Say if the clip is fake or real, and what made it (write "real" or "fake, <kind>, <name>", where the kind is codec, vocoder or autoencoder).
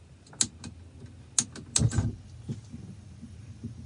real